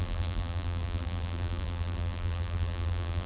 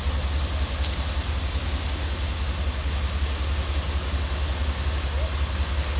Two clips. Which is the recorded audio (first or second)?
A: second